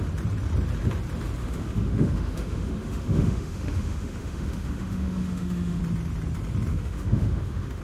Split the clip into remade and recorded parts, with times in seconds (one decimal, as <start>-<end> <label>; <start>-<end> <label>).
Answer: 0.0-1.4 recorded; 1.4-5.8 remade; 5.8-6.7 recorded; 6.7-7.8 remade